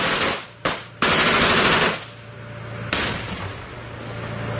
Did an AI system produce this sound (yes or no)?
no